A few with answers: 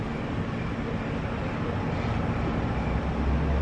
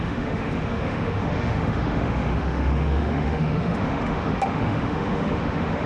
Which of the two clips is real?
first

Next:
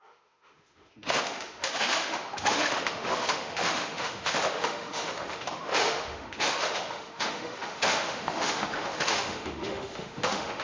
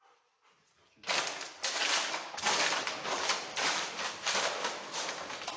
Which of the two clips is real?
second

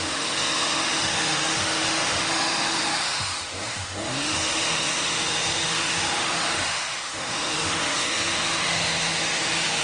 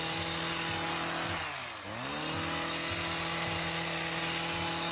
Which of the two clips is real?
second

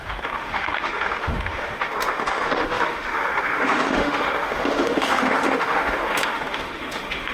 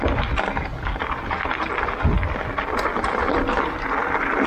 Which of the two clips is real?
second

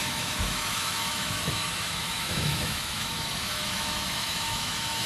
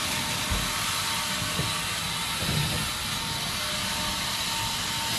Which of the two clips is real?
second